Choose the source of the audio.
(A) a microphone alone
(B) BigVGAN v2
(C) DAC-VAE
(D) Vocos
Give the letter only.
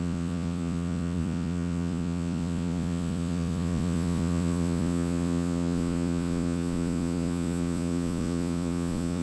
D